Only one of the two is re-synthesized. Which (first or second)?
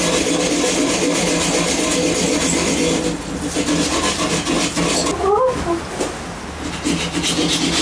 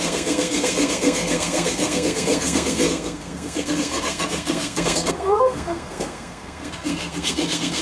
second